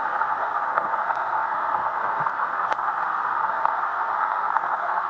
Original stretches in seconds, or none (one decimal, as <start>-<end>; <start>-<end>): none